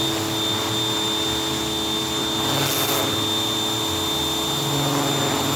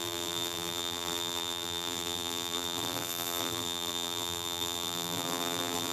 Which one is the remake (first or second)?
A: second